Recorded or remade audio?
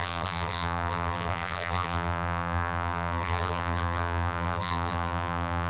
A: remade